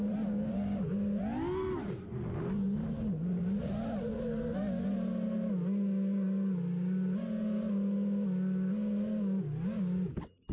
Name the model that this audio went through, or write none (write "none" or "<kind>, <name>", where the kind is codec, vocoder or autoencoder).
none